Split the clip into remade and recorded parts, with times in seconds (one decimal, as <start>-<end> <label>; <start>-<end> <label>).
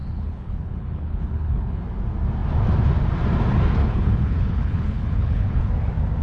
0.0-1.8 remade; 1.8-3.8 recorded; 3.8-5.7 remade; 5.7-6.2 recorded